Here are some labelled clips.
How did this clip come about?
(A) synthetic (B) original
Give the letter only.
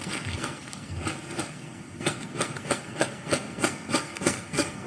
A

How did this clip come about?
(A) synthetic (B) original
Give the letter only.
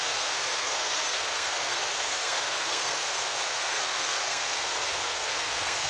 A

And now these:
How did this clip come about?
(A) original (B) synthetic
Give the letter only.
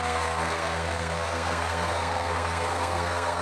B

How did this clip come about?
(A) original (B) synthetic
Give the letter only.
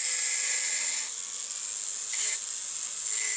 A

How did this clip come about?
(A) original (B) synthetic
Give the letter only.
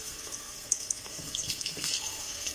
B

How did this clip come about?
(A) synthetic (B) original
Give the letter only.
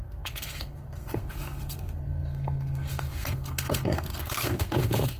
A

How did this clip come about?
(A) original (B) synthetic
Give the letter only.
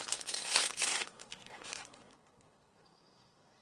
B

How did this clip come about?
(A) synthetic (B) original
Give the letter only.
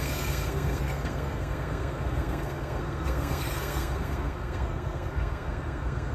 A